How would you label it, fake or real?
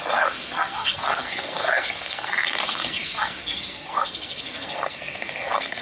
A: fake